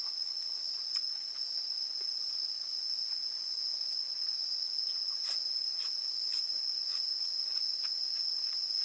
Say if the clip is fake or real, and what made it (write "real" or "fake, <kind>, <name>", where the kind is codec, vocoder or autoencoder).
fake, vocoder, Vocos